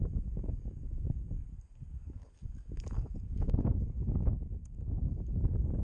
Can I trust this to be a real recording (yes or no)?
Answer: no